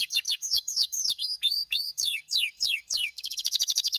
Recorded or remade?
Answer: remade